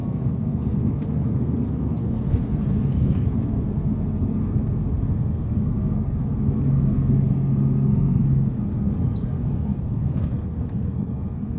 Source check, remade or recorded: remade